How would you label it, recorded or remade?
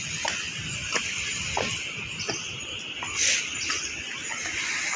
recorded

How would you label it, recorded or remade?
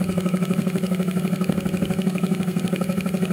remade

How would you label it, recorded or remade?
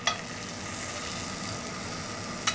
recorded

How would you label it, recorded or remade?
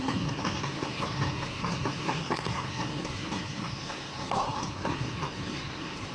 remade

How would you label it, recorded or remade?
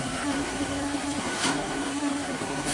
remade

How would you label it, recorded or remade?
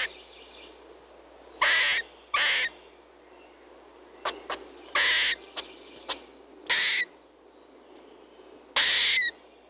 recorded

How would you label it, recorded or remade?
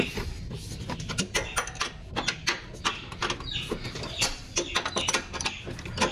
recorded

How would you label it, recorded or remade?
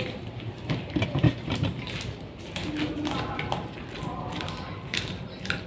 recorded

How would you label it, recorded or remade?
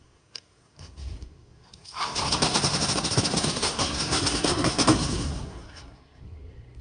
remade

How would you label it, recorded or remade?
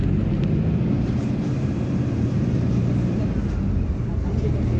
recorded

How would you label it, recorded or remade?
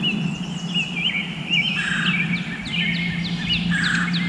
recorded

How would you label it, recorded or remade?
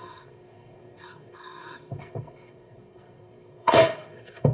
remade